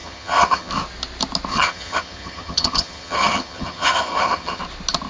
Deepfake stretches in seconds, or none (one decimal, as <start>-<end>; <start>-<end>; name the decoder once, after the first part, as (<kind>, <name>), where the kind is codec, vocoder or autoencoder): 0.0-0.7 (vocoder, HiFi-GAN); 1.5-4.6